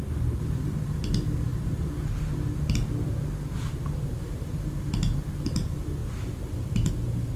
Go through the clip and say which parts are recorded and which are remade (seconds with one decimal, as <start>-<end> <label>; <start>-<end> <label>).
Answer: 0.0-7.4 recorded